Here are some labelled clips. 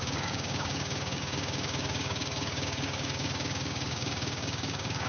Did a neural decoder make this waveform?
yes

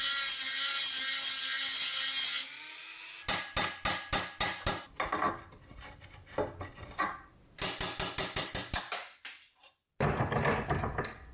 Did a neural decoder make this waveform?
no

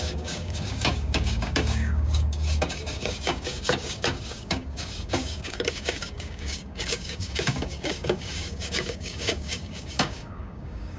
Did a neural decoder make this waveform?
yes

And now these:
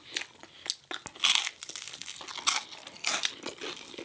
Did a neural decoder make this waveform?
no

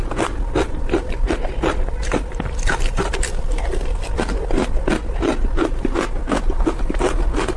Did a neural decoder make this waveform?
no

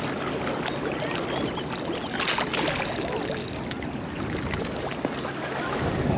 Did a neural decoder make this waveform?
no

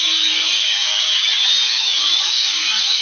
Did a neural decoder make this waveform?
yes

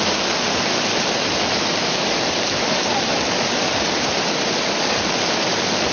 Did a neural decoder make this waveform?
no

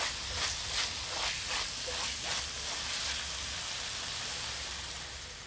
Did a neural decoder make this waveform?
no